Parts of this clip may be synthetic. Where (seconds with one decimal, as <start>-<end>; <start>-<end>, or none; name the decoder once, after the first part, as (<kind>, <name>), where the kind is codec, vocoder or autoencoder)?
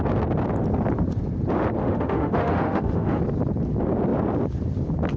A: 1.8-3.2 (autoencoder, DAC-VAE)